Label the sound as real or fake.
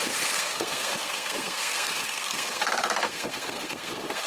fake